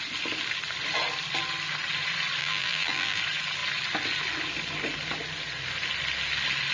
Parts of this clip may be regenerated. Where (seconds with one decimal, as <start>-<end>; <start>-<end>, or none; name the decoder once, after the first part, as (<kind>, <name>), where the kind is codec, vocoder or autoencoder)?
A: 2.4-3.2 (vocoder, BigVGAN v2)